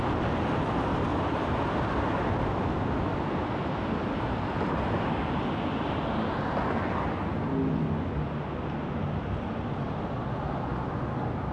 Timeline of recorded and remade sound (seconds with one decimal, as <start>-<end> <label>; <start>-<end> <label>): 0.0-1.1 recorded; 1.1-2.3 remade; 2.3-9.0 recorded; 9.0-9.7 remade; 9.7-11.5 recorded